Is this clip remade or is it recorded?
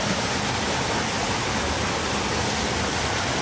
recorded